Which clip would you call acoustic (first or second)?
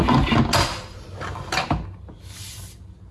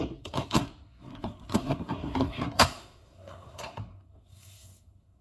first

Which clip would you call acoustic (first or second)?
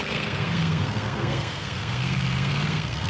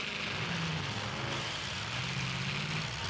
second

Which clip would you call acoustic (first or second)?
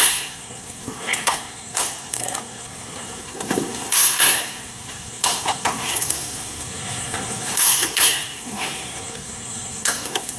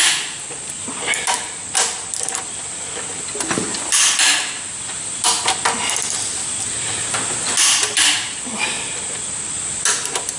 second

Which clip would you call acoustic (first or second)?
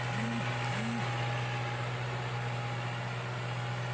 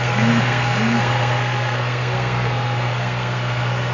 first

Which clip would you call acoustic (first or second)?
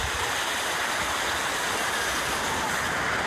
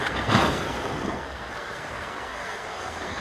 first